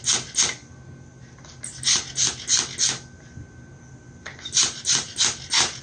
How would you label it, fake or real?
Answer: real